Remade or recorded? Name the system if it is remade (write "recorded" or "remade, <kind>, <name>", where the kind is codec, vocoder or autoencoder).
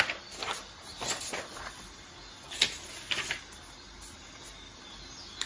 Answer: recorded